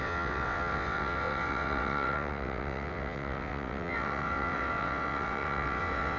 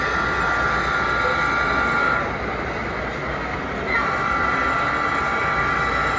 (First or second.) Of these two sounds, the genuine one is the second